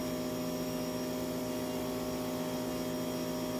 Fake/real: real